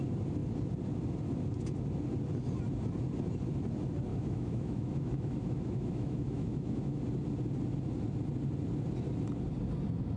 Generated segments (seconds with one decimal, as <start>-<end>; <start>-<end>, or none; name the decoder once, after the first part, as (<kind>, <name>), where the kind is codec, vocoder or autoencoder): 4.1-7.0 (autoencoder, DAC-VAE)